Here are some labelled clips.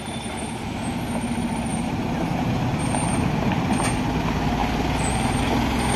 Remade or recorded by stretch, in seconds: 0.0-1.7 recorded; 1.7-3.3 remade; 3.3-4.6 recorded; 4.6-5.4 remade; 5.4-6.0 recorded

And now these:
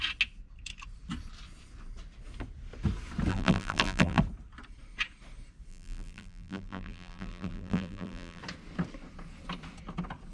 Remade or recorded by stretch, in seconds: 0.0-3.3 recorded; 3.3-4.2 remade; 4.2-5.7 recorded; 5.7-8.4 remade; 8.4-10.3 recorded

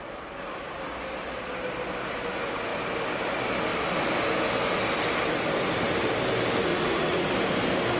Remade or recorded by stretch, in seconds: 0.0-6.7 recorded; 6.7-7.3 remade; 7.3-8.0 recorded

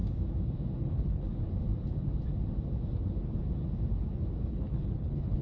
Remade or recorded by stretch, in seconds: 0.0-0.8 recorded; 0.8-1.3 remade; 1.3-4.5 recorded; 4.5-5.4 remade

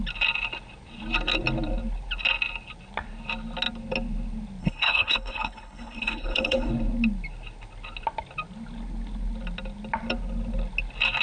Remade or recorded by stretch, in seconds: 0.0-4.6 recorded; 4.6-6.7 remade; 6.7-11.2 recorded

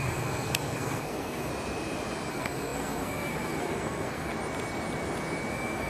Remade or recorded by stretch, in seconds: 0.0-1.5 remade; 1.5-2.3 recorded; 2.3-4.3 remade; 4.3-5.5 recorded; 5.5-5.9 remade